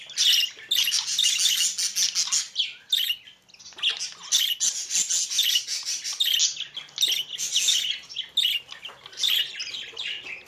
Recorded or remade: recorded